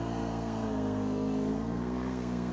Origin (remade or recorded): remade